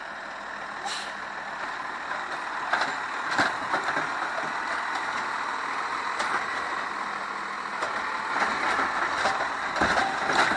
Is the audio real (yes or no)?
yes